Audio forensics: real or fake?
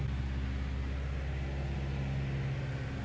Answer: real